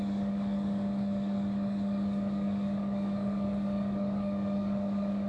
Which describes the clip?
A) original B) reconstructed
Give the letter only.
B